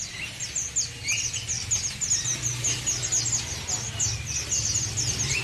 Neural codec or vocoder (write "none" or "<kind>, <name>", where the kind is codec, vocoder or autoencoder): none